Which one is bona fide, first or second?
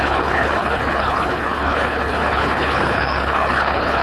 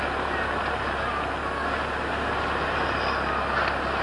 second